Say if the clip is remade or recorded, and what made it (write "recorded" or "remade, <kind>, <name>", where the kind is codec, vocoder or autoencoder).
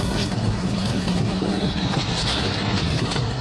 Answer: remade, codec, SNAC